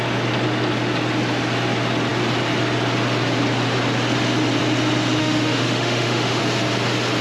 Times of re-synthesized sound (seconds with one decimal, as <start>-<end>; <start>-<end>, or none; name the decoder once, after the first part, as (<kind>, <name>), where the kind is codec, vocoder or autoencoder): 5.2-6.4 (autoencoder, DAC-VAE)